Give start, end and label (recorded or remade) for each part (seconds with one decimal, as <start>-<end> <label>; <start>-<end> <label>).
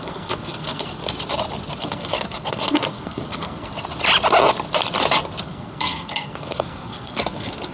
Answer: 0.0-1.0 remade; 1.0-1.8 recorded; 1.8-3.7 remade; 3.7-5.4 recorded; 5.4-7.7 remade